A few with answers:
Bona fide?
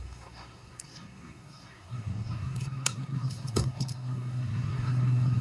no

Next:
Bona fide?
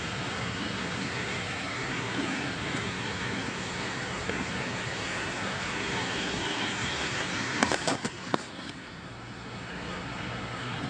no